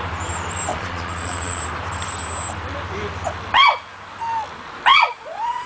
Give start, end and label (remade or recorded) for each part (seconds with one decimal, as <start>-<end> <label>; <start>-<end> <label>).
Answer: 0.0-0.7 recorded; 0.7-1.6 remade; 1.6-4.9 recorded; 4.9-5.7 remade